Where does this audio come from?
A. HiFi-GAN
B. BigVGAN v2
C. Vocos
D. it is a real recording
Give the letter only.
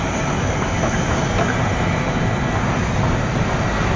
D